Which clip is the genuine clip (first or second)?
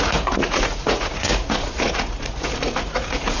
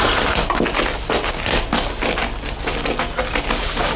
second